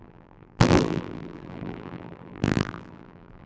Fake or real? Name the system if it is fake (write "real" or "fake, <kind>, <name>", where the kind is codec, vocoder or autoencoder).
fake, vocoder, BigVGAN v2